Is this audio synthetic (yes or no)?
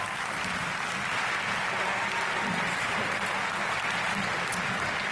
no